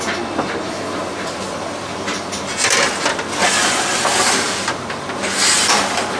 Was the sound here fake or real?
real